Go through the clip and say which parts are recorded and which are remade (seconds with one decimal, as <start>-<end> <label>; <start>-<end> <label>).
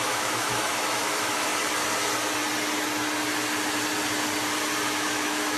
0.0-1.5 remade; 1.5-4.9 recorded; 4.9-5.6 remade